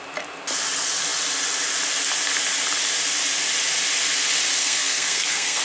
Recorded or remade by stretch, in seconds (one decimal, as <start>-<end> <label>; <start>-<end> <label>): 0.0-4.6 recorded; 4.6-5.6 remade